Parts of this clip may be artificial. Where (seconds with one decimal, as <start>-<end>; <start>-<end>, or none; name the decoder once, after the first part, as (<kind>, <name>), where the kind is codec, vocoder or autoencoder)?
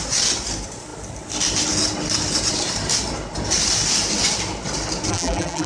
5.1-5.7 (vocoder, BigVGAN v2)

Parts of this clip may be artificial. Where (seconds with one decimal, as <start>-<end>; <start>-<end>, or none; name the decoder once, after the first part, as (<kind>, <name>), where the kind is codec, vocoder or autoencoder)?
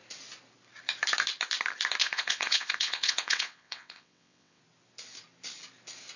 2.0-4.6 (vocoder, WaveNeXt)